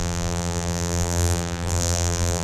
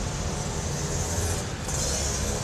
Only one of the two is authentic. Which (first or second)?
second